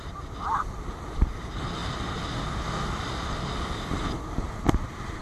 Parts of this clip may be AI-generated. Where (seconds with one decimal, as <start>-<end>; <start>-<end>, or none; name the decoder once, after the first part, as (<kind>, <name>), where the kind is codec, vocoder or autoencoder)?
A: none